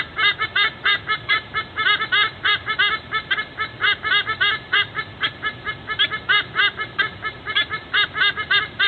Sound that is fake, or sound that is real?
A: fake